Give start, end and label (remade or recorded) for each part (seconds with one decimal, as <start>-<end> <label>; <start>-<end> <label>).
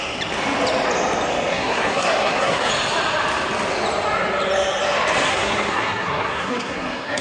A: 0.0-1.5 recorded; 1.5-2.7 remade; 2.7-5.3 recorded; 5.3-7.2 remade